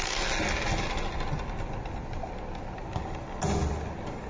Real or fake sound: real